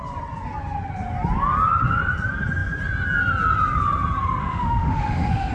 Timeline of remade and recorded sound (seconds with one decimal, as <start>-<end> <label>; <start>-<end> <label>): 0.0-4.4 recorded; 4.4-5.5 remade